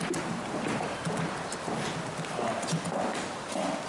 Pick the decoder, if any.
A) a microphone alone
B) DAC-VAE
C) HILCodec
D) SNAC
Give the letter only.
A